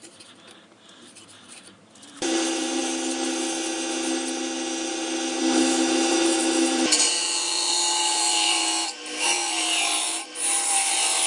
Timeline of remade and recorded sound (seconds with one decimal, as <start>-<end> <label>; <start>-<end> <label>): 0.0-2.8 remade; 2.8-5.4 recorded; 5.4-11.3 remade